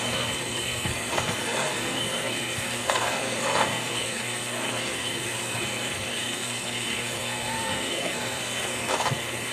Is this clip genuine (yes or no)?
no